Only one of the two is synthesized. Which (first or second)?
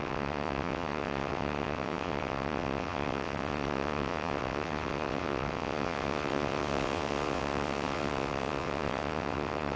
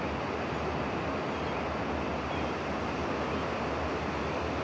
first